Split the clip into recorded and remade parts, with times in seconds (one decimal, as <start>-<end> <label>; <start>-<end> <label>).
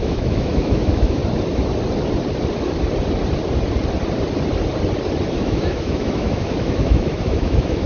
0.0-1.2 remade; 1.2-5.4 recorded; 5.4-7.9 remade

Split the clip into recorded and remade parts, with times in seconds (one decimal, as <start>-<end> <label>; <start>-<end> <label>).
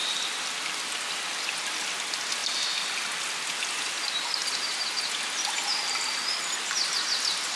0.0-1.9 remade; 1.9-7.6 recorded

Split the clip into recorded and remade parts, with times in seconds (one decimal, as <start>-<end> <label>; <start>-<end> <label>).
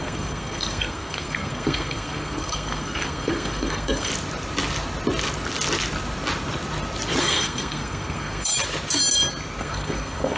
0.0-4.1 remade; 4.1-7.2 recorded; 7.2-8.5 remade; 8.5-9.6 recorded; 9.6-10.4 remade